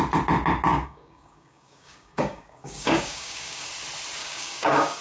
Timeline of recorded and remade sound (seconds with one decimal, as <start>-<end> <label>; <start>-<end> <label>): 0.0-0.7 recorded; 0.7-3.7 remade; 3.7-4.2 recorded; 4.2-5.0 remade